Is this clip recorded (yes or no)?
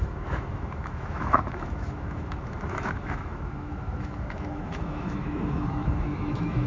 no